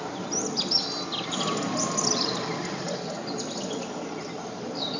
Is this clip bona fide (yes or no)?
yes